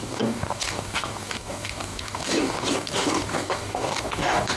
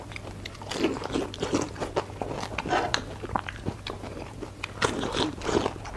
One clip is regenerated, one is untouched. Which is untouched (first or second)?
second